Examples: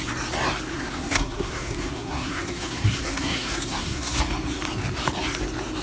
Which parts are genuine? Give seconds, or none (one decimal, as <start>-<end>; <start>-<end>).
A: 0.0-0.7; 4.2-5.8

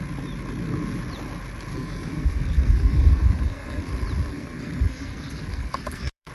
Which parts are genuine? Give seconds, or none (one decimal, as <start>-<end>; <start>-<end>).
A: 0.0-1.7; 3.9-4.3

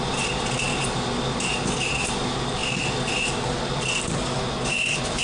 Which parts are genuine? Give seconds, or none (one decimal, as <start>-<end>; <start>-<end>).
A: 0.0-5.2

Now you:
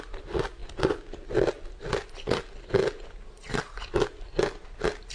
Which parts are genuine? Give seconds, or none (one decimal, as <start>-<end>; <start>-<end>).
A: 0.0-5.1

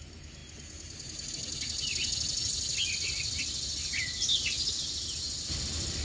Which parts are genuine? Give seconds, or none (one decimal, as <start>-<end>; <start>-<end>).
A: 0.0-6.0